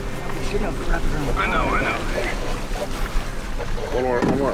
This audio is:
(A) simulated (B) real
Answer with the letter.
B